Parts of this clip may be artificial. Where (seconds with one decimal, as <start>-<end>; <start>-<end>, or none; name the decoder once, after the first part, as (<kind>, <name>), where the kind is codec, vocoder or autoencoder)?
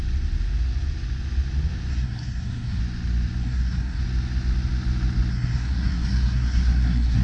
1.9-2.8 (codec, SNAC); 3.4-4.0; 5.3-7.2